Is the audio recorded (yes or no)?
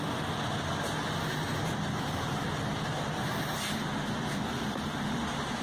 yes